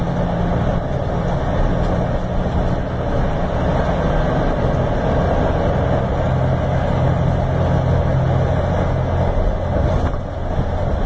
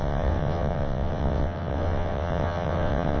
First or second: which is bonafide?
first